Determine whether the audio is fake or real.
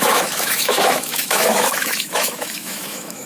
fake